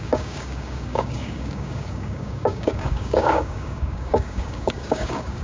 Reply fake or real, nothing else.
fake